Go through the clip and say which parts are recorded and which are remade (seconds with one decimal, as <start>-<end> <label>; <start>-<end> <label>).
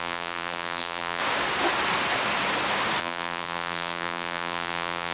0.0-1.2 remade; 1.2-3.0 recorded; 3.0-5.1 remade